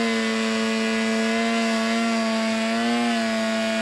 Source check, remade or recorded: recorded